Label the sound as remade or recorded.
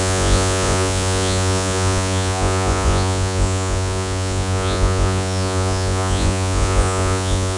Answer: remade